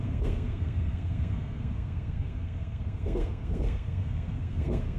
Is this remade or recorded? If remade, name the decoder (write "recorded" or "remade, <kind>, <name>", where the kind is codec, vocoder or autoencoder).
remade, codec, SNAC